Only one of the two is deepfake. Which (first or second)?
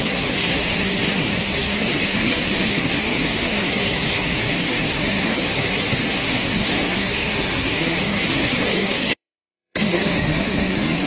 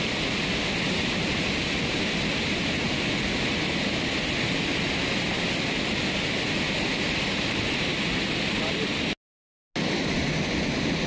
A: first